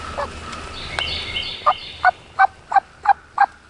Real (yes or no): yes